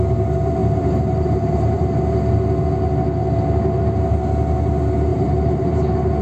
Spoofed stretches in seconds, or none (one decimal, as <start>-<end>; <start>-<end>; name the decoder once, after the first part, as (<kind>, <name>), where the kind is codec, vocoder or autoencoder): 0.6-1.9 (vocoder, BigVGAN v2); 5.1-5.8